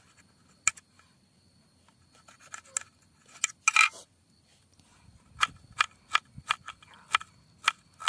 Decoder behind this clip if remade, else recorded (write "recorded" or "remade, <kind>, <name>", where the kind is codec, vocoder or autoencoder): recorded